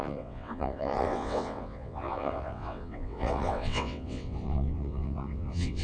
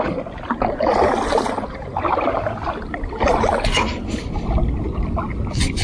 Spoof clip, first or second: first